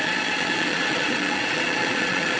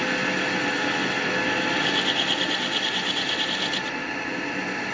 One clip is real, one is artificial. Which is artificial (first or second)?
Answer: first